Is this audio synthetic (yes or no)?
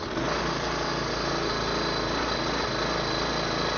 no